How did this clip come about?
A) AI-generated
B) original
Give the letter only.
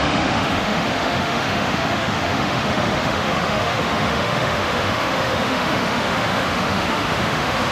A